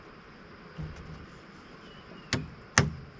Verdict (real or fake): real